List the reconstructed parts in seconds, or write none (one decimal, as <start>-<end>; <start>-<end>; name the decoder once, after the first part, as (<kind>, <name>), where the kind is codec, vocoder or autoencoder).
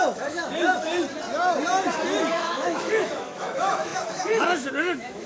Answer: 0.0-0.9 (autoencoder, DAC-VAE); 2.3-5.3